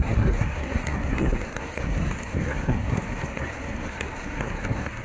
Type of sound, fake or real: fake